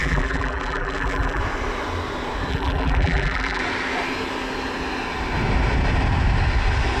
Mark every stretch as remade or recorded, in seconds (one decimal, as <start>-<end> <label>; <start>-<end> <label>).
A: 0.0-1.4 remade; 1.4-2.5 recorded; 2.5-3.6 remade; 3.6-7.0 recorded